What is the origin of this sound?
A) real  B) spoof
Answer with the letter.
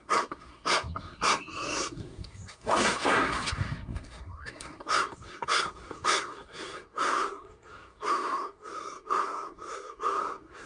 B